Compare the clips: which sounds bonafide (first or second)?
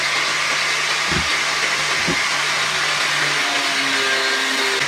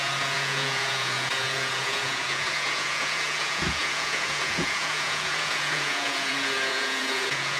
first